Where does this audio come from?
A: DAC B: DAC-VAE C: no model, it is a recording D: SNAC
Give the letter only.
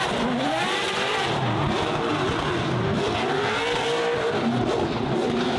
C